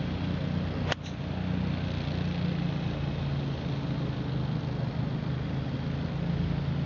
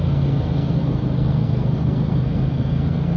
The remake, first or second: second